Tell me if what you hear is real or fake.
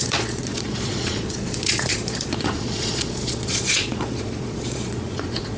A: fake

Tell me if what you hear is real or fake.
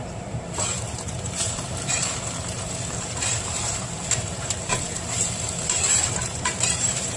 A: fake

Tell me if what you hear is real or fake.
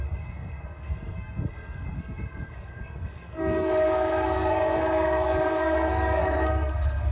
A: fake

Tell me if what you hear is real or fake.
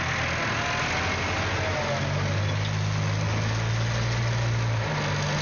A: real